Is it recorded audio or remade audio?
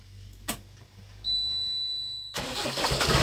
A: remade